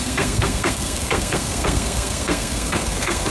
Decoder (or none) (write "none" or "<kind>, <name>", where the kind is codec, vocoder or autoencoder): codec, SNAC